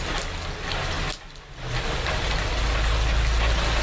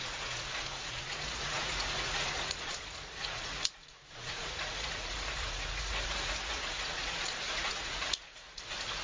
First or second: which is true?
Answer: first